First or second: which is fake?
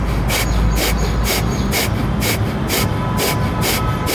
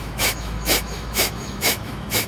second